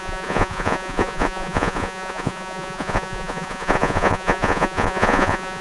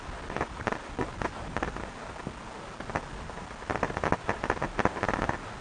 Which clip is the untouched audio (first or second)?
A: second